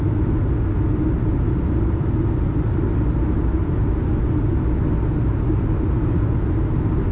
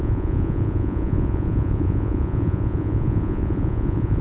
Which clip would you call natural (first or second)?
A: first